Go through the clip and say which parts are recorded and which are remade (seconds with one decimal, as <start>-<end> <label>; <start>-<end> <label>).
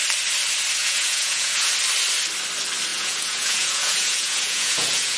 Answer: 0.0-0.8 recorded; 0.8-1.7 remade; 1.7-2.9 recorded; 2.9-5.2 remade